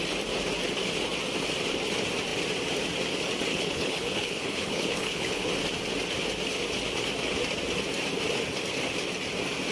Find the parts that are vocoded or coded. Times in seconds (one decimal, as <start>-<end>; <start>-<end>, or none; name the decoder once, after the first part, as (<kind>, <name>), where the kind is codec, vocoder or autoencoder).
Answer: 3.5-5.5 (codec, HILCodec)